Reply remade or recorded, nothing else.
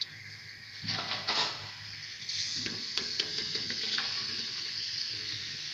remade